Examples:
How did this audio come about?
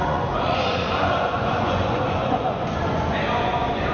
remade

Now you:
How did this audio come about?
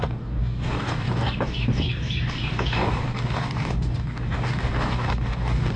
remade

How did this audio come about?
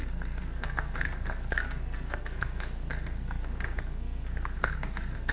remade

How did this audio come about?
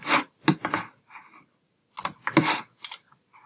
recorded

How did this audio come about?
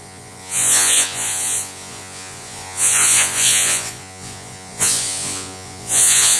remade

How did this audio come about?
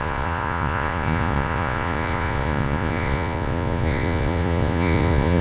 remade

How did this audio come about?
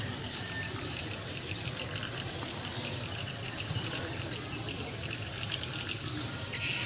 recorded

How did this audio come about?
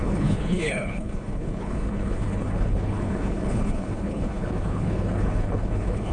remade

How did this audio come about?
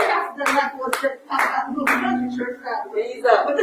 recorded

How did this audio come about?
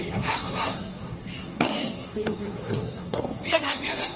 remade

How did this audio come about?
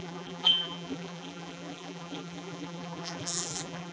remade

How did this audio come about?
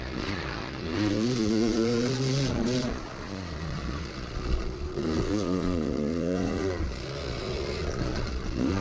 remade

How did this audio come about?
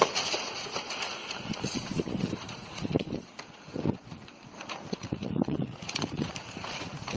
remade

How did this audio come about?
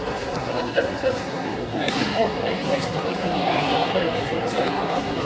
remade